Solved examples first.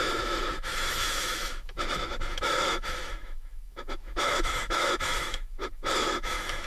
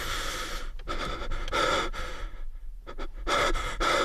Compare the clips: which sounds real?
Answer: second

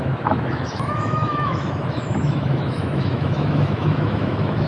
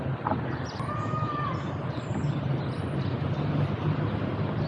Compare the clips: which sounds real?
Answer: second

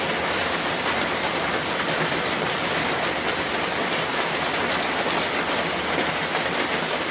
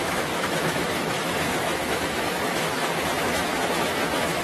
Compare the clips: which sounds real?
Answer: first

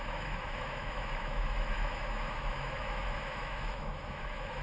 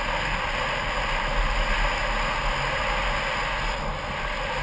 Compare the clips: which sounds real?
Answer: second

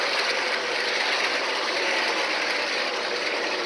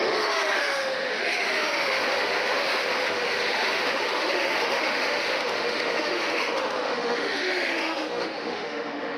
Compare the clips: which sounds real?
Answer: first